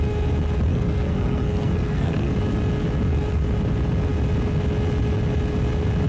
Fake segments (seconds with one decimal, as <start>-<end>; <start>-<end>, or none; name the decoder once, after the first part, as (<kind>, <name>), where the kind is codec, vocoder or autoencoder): 0.7-2.3 (codec, SNAC)